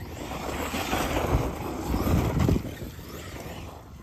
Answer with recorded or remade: recorded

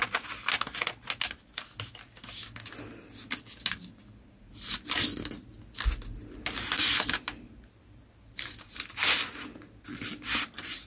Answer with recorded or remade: recorded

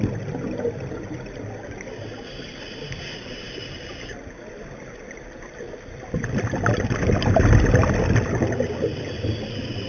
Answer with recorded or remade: recorded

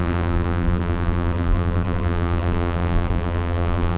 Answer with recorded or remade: remade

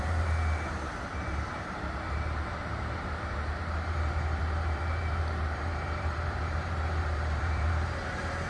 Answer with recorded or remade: remade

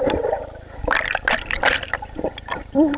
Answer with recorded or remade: recorded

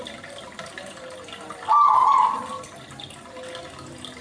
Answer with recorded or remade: recorded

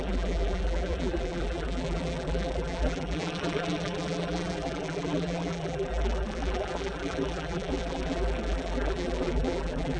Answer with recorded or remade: remade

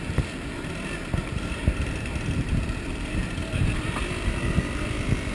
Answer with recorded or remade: remade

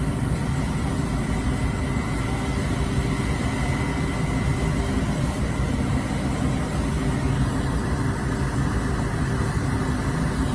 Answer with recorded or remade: recorded